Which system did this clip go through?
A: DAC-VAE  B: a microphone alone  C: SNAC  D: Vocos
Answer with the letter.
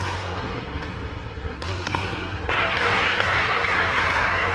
C